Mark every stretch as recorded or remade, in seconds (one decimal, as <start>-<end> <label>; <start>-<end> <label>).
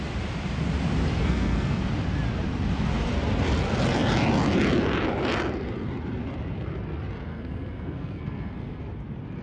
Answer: 0.0-1.2 recorded; 1.2-1.8 remade; 1.8-7.3 recorded; 7.3-8.8 remade; 8.8-9.4 recorded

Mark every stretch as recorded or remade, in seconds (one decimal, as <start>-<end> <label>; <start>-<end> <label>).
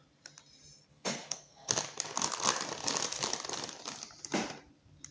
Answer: 0.0-0.9 recorded; 0.9-1.7 remade; 1.7-5.1 recorded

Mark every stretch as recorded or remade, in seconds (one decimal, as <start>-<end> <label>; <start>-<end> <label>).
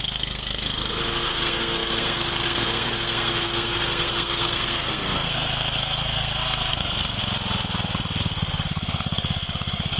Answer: 0.0-7.2 remade; 7.2-8.2 recorded; 8.2-10.0 remade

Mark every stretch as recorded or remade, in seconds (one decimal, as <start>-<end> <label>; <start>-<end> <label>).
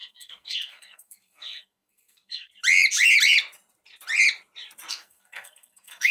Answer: 0.0-2.5 remade; 2.5-4.9 recorded; 4.9-6.1 remade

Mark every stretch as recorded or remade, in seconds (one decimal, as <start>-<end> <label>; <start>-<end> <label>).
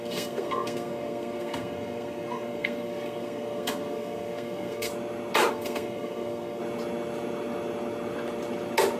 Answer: 0.0-4.9 remade; 4.9-5.5 recorded; 5.5-6.6 remade; 6.6-9.0 recorded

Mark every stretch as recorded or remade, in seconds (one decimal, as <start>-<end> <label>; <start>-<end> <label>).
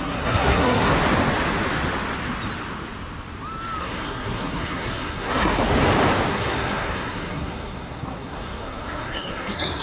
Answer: 0.0-0.9 remade; 0.9-3.8 recorded; 3.8-5.6 remade; 5.6-6.3 recorded; 6.3-9.8 remade